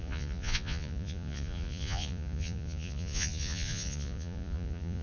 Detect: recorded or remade remade